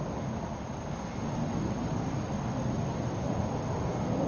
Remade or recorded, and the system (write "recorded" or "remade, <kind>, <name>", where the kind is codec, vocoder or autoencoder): recorded